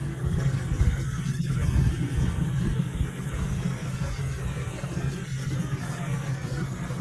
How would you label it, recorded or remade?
remade